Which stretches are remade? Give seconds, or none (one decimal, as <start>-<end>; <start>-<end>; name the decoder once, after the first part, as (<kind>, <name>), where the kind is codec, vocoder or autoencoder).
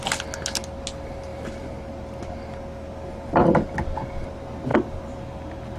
none